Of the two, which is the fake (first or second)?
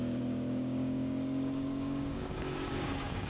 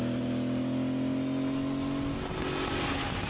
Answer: first